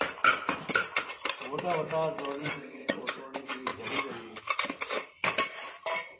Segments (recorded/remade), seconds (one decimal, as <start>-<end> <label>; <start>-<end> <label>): 0.0-2.4 recorded; 2.4-3.0 remade; 3.0-6.2 recorded